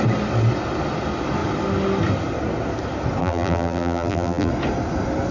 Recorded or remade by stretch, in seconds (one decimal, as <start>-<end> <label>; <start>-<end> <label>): 0.0-3.2 recorded; 3.2-4.5 remade; 4.5-5.3 recorded